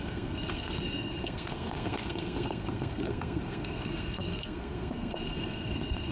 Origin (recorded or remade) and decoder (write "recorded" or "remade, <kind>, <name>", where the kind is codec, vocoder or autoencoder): remade, codec, SNAC